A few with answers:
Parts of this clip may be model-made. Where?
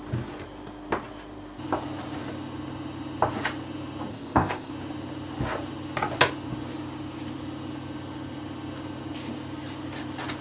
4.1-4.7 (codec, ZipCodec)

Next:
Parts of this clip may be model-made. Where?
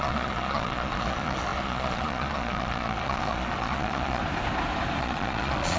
0.0-4.2 (vocoder, Vocos); 5.0-5.8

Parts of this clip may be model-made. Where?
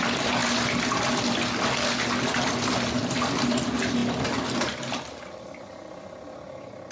none